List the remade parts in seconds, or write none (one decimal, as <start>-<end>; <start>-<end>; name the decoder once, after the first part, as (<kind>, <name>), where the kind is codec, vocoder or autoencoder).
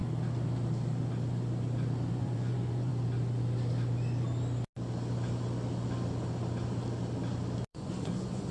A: 2.1-2.9 (vocoder, Vocos); 7.7-8.5